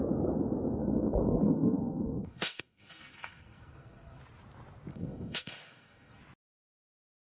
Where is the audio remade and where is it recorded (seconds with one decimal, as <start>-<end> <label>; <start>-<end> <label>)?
0.0-0.8 recorded; 0.8-4.2 remade; 4.2-4.9 recorded; 4.9-6.2 remade; 6.2-7.3 recorded

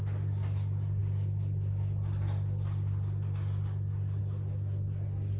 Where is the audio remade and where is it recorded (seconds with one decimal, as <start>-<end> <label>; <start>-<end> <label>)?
0.0-5.4 recorded

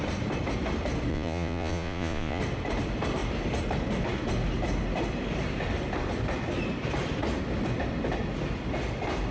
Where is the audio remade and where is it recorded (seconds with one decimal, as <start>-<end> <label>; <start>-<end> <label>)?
0.0-1.1 recorded; 1.1-2.4 remade; 2.4-9.3 recorded

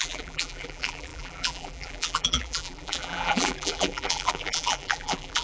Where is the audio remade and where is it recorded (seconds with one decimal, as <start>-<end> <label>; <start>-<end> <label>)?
0.0-5.4 remade